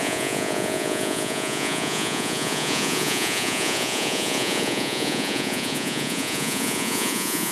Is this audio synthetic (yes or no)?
yes